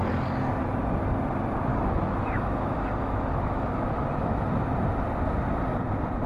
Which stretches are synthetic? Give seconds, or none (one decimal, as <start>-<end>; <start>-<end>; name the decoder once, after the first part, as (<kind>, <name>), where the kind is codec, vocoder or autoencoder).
1.7-4.5 (autoencoder, DAC-VAE)